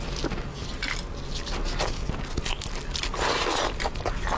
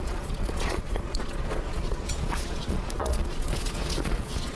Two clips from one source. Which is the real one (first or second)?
first